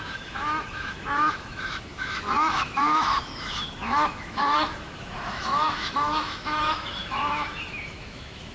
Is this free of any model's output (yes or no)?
no